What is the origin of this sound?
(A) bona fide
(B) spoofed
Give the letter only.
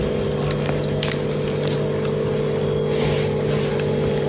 A